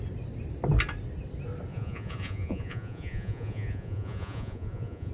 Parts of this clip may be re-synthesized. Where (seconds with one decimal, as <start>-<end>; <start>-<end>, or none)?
1.7-5.1